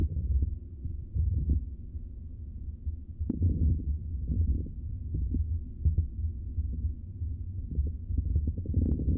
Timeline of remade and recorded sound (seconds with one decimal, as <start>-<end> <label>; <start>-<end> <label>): 0.0-4.0 remade; 4.0-4.6 recorded; 4.6-5.1 remade; 5.1-7.0 recorded; 7.0-9.2 remade